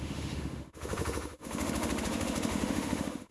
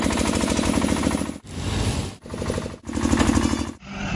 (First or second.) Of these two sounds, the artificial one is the first